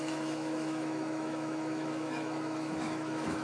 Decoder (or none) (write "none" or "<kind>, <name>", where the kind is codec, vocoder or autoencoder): autoencoder, DAC-VAE